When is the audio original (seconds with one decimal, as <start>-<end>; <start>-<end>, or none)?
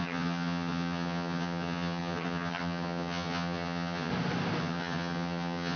4.1-4.6